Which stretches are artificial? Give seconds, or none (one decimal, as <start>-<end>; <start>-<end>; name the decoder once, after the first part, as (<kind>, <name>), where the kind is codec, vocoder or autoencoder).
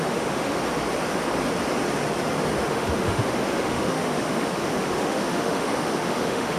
0.0-0.6 (autoencoder, DAC-VAE); 2.7-6.6